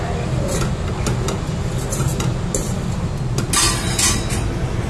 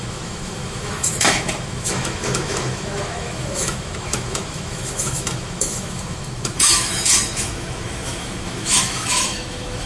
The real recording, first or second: first